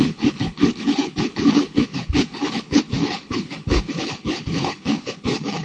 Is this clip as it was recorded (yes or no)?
no